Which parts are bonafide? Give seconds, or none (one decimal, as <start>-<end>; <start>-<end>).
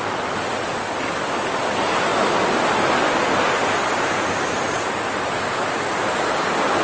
0.0-6.8